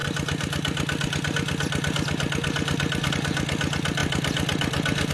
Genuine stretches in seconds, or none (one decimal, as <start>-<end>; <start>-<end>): 0.0-4.0

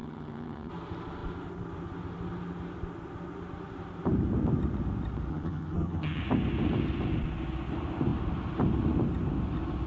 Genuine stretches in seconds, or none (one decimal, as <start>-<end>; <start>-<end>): 0.7-5.3; 6.2-9.9

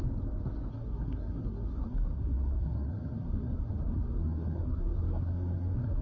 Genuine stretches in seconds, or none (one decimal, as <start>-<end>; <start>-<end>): 0.0-0.7

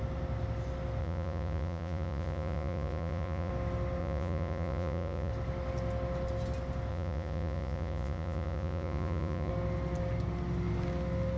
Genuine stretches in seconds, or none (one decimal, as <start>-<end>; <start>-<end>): 0.0-1.0; 3.5-4.0; 5.3-6.9; 9.5-11.4

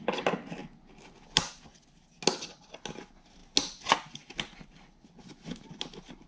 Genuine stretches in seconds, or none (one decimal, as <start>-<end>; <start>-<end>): 0.0-6.3

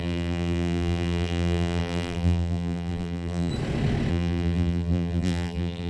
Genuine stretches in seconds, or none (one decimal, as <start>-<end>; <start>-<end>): 3.5-4.1